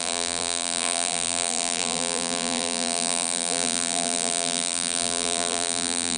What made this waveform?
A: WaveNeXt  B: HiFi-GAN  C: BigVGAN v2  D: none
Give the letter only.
C